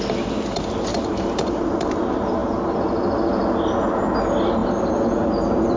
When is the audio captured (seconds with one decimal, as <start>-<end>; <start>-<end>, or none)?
0.0-0.9; 1.6-5.8